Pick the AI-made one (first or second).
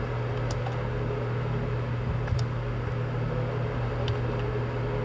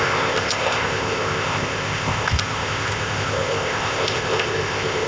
second